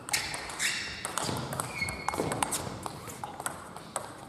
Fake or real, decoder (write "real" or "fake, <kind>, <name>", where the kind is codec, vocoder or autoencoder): real